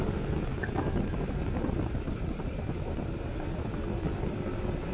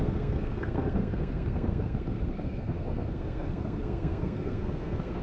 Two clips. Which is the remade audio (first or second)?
second